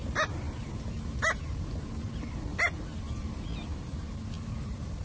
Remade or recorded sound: recorded